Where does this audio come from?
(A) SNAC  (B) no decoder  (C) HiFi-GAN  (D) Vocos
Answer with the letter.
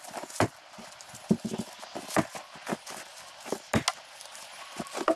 B